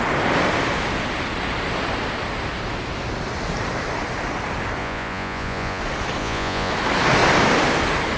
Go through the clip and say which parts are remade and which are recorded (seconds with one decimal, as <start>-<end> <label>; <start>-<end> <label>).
0.0-4.8 recorded; 4.8-5.8 remade; 5.8-6.2 recorded; 6.2-6.7 remade; 6.7-8.2 recorded